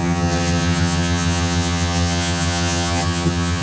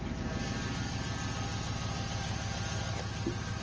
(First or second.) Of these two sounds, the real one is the second